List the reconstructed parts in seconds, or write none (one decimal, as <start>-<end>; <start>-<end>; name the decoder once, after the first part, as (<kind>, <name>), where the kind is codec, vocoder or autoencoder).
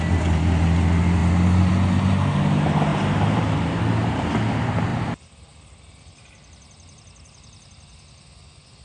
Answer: 2.9-3.8 (vocoder, BigVGAN v2)